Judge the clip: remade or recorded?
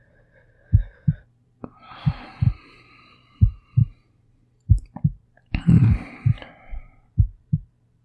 remade